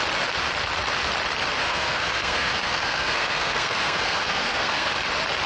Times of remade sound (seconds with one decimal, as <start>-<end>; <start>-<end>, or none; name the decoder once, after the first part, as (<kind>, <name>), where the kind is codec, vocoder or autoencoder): 1.6-4.9 (codec, SNAC)